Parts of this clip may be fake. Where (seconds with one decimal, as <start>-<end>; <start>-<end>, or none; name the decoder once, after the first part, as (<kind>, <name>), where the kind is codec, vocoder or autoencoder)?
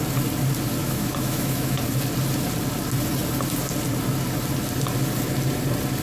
0.8-1.8 (autoencoder, DAC-VAE)